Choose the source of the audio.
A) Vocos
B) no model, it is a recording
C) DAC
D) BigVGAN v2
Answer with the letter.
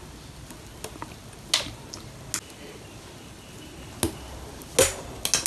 B